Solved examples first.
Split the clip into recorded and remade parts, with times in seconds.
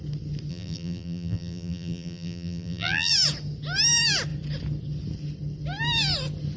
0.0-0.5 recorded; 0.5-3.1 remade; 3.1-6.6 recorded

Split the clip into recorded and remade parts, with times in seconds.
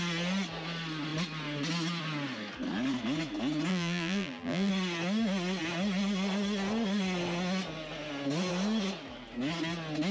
0.0-3.7 recorded; 3.7-4.7 remade; 4.7-10.1 recorded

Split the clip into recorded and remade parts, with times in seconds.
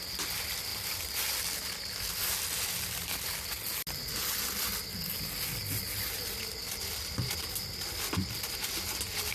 0.0-0.7 recorded; 0.7-1.4 remade; 1.4-9.3 recorded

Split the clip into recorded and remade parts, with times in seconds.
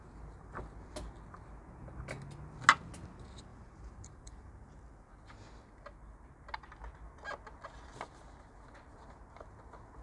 0.0-3.5 recorded; 3.5-4.4 remade; 4.4-10.0 recorded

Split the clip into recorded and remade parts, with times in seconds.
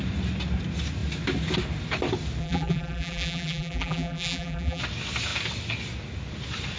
0.0-2.4 recorded; 2.4-4.8 remade; 4.8-6.8 recorded